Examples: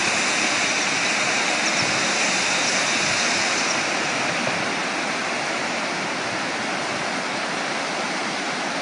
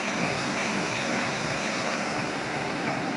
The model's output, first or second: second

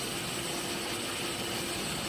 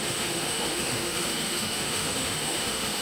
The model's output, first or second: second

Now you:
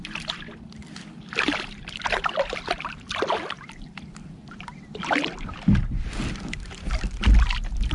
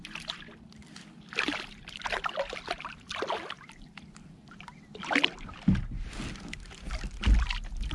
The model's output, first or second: first